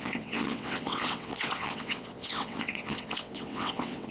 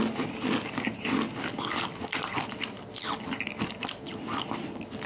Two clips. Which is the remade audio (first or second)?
first